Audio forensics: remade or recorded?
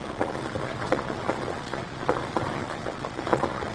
remade